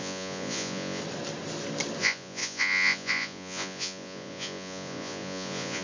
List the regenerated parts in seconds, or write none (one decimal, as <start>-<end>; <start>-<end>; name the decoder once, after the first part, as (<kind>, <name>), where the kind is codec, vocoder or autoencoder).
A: 0.0-1.0 (vocoder, Vocos); 2.0-5.8